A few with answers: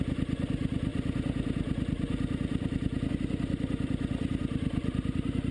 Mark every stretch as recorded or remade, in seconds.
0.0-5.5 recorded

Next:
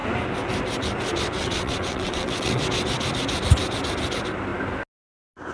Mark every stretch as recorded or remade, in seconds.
0.0-1.4 recorded; 1.4-2.6 remade; 2.6-5.5 recorded

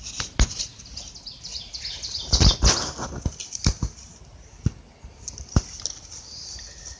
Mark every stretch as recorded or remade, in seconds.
0.0-7.0 recorded

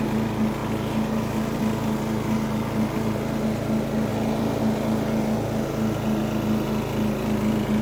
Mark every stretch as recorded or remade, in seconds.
0.0-4.1 recorded; 4.1-4.6 remade; 4.6-7.8 recorded

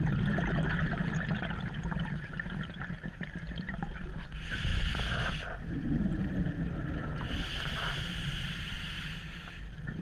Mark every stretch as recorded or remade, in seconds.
0.0-10.0 recorded

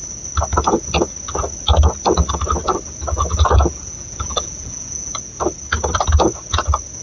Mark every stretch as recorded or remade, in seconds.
0.0-3.7 recorded; 3.7-5.1 remade; 5.1-7.0 recorded

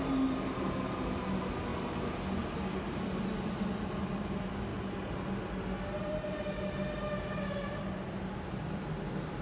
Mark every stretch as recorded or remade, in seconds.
0.0-9.4 recorded

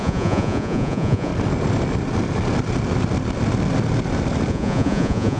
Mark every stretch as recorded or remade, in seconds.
0.0-1.3 remade; 1.3-4.5 recorded; 4.5-5.4 remade